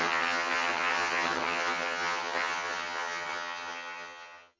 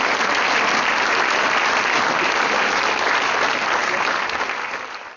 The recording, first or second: second